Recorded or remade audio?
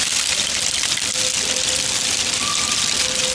recorded